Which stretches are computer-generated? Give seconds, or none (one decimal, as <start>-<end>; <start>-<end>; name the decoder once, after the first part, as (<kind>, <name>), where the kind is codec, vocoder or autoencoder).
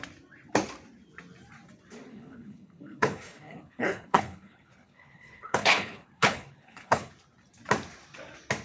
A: 2.1-7.1 (codec, HILCodec)